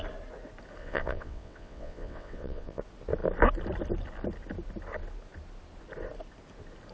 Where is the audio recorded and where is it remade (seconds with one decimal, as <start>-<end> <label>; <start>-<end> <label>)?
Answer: 0.0-0.8 recorded; 0.8-2.8 remade; 2.8-6.9 recorded